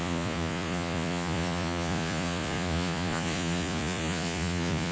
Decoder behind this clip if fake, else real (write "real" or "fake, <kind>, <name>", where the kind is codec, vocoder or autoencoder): fake, vocoder, Vocos